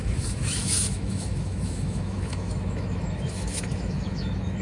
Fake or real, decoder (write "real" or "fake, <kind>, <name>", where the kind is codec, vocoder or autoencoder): fake, autoencoder, DAC-VAE